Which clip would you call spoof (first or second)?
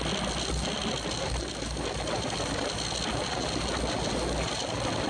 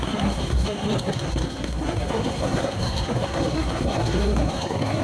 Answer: second